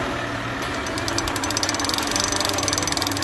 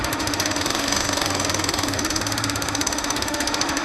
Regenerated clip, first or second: second